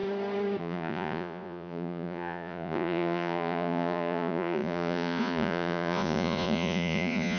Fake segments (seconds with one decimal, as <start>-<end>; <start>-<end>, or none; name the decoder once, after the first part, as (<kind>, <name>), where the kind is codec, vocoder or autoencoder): 0.6-7.4 (vocoder, Vocos)